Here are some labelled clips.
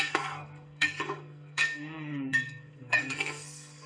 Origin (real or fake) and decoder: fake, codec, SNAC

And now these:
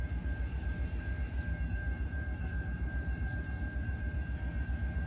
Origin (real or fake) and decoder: fake, vocoder, BigVGAN v2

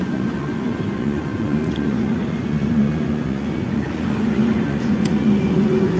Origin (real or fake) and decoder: fake, vocoder, Vocos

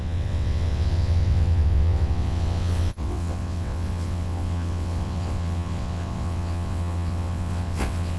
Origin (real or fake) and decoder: fake, vocoder, WaveNeXt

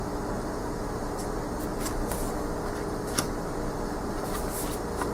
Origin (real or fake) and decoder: real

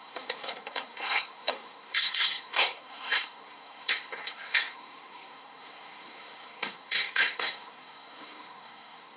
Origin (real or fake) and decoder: fake, codec, SNAC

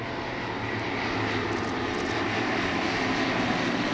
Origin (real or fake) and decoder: real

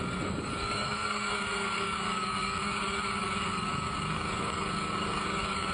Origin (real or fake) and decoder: fake, codec, DAC